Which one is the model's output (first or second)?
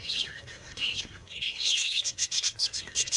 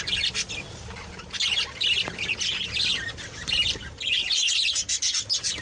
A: first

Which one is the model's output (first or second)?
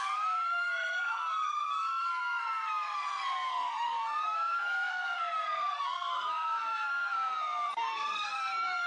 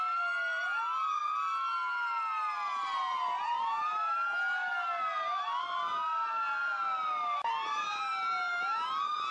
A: first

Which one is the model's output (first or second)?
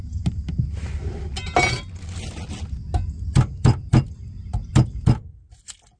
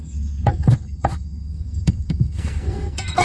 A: second